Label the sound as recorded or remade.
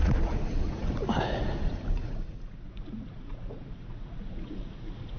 remade